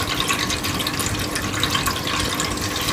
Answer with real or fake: real